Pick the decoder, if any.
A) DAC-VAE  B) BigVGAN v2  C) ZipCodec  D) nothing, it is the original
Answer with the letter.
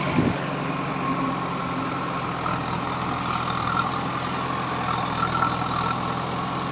D